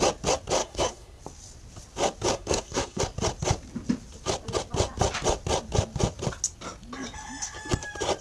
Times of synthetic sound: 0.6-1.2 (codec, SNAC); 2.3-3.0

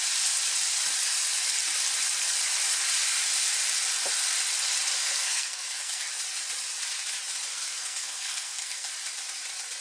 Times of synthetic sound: 5.0-6.1 (codec, SNAC); 7.5-8.9

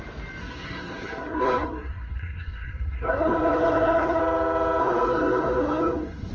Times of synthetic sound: 0.4-4.2 (codec, SNAC); 4.8-6.3

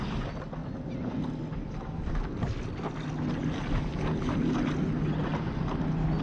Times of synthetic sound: none